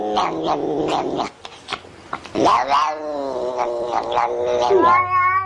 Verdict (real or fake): real